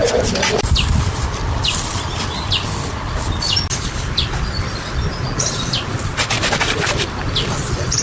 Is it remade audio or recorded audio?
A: recorded